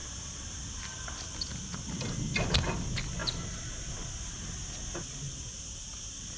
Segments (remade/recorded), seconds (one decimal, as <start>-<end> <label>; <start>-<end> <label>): 0.0-6.4 recorded